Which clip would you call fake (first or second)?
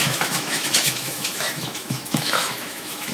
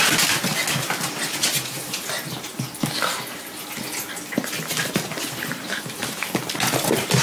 first